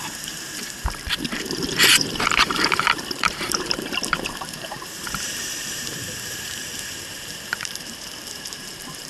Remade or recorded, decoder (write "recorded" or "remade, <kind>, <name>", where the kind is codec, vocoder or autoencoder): remade, vocoder, BigVGAN v2